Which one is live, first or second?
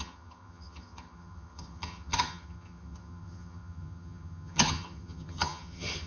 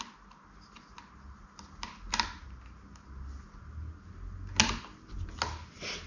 second